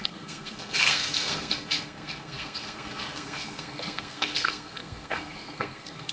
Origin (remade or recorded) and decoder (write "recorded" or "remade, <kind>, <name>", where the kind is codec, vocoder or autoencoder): remade, codec, SNAC